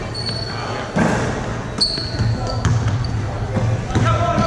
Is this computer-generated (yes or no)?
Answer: no